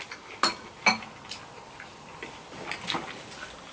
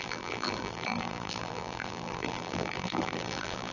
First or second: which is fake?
second